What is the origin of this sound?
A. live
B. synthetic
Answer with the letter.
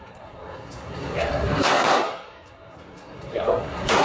B